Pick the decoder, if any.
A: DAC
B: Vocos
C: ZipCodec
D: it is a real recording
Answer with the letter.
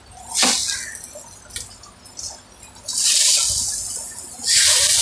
D